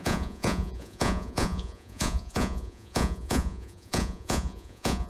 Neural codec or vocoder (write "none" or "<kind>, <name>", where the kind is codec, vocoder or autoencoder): vocoder, Vocos